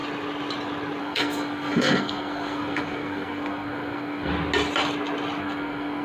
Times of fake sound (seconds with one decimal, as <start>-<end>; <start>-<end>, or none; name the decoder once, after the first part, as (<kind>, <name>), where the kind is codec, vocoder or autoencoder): 1.0-4.3 (codec, SNAC); 5.4-6.0